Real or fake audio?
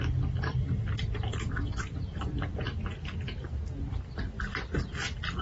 real